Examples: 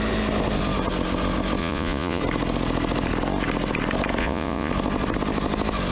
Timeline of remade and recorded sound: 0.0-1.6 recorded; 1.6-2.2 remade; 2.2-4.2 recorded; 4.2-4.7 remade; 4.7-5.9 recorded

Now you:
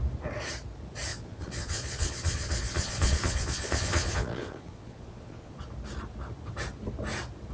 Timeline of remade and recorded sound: 0.0-1.1 recorded; 1.1-5.6 remade; 5.6-7.5 recorded

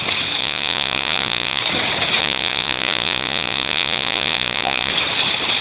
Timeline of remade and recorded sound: 0.0-0.4 recorded; 0.4-1.6 remade; 1.6-2.2 recorded; 2.2-4.9 remade; 4.9-5.6 recorded